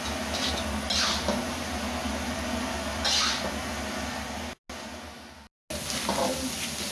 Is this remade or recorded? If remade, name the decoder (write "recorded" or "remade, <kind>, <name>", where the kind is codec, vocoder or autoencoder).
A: recorded